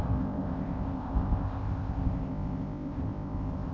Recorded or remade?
remade